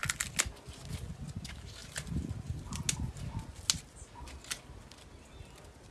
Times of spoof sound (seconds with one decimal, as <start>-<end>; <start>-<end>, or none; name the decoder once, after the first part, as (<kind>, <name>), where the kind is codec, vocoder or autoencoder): none